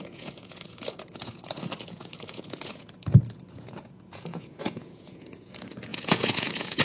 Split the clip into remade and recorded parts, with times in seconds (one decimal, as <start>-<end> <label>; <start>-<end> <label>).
0.0-6.8 remade